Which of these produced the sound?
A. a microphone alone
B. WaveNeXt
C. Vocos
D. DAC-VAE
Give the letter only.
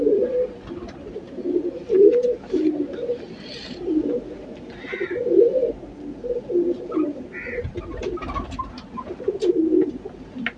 A